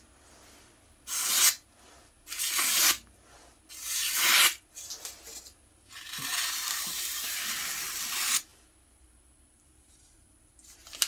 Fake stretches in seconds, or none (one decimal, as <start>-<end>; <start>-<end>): 5.5-7.4